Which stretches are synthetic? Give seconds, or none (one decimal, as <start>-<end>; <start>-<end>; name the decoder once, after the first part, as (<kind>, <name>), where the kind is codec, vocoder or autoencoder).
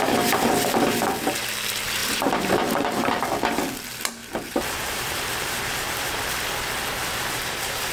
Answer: 2.0-3.2 (vocoder, BigVGAN v2); 4.2-6.2